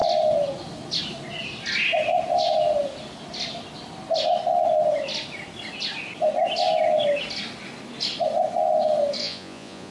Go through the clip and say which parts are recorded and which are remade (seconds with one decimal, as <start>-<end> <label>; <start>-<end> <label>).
0.0-9.2 recorded; 9.2-9.9 remade